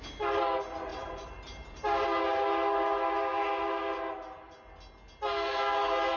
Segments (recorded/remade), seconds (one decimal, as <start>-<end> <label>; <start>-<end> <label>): 0.0-0.9 recorded; 0.9-1.8 remade; 1.8-6.2 recorded